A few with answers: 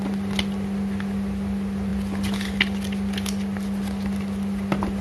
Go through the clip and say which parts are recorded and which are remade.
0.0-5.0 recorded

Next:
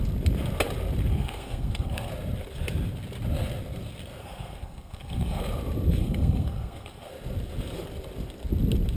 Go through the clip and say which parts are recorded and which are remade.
0.0-1.1 recorded; 1.1-2.1 remade; 2.1-4.2 recorded; 4.2-5.4 remade; 5.4-6.0 recorded; 6.0-7.1 remade; 7.1-9.0 recorded